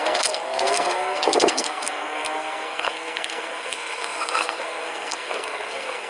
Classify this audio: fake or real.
fake